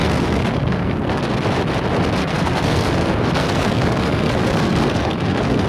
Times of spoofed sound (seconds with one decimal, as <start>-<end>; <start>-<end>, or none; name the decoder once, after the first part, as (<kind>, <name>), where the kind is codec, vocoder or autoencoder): 0.0-1.2 (codec, SNAC); 2.2-5.7